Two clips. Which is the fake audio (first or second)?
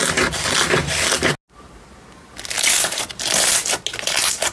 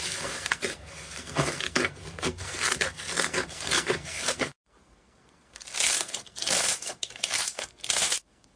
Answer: second